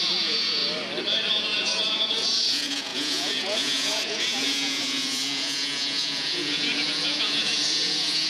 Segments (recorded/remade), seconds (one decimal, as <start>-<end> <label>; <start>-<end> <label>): 0.0-0.6 remade; 0.6-1.3 recorded; 1.3-8.3 remade